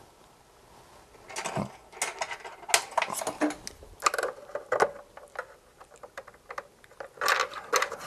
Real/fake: real